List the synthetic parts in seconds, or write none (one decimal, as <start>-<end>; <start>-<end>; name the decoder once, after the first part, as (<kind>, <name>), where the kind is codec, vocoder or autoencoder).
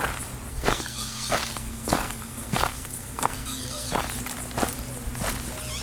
0.5-3.9 (codec, SNAC)